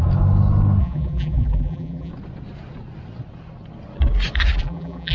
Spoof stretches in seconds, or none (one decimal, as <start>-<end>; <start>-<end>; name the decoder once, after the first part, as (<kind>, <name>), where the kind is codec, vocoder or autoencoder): 0.8-2.1 (vocoder, BigVGAN v2); 4.6-5.1